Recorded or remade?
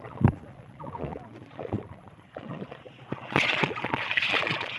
remade